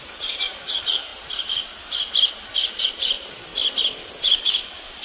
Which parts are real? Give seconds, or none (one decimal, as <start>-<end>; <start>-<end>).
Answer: 1.1-2.8; 3.5-4.1